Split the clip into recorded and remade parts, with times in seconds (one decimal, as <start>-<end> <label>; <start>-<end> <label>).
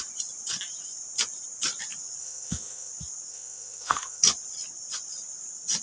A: 0.0-2.2 recorded; 2.2-2.9 remade; 2.9-3.3 recorded; 3.3-4.2 remade; 4.2-5.8 recorded